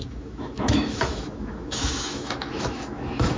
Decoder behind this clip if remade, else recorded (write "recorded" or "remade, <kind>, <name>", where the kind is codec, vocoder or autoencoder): remade, autoencoder, DAC-VAE